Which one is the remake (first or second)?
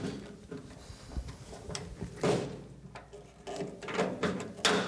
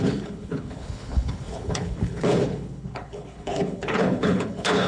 second